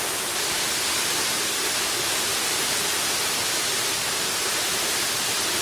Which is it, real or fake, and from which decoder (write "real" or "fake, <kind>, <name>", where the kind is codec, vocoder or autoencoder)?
real